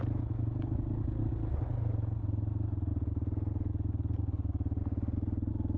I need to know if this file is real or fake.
real